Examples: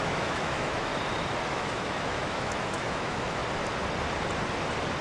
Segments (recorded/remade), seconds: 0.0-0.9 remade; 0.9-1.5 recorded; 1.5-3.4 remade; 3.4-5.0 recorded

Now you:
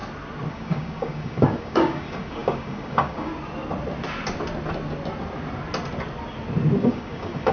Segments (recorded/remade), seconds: 0.0-0.5 recorded; 0.5-3.3 remade; 3.3-6.8 recorded; 6.8-7.5 remade

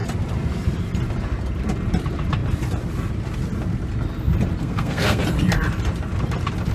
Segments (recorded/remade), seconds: 0.0-4.6 recorded; 4.6-5.2 remade; 5.2-6.7 recorded